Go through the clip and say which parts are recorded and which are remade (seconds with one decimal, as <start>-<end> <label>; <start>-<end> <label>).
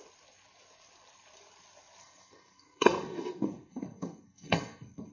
0.0-2.0 recorded; 2.0-5.1 remade